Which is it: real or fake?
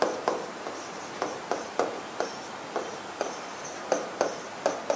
real